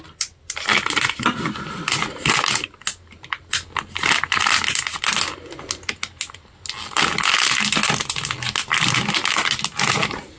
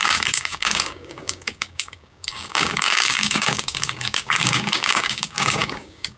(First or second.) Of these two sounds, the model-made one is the second